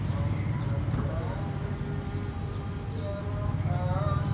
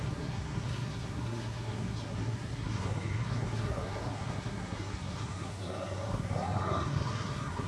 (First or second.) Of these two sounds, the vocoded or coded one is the second